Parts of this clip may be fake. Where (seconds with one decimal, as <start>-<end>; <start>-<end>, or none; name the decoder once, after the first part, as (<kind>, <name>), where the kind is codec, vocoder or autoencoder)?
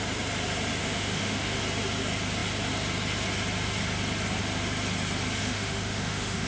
0.8-1.6 (autoencoder, DAC-VAE); 5.4-6.5